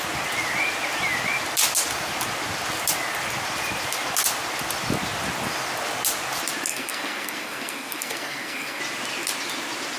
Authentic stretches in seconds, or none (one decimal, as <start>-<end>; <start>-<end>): 0.0-6.7; 8.8-10.0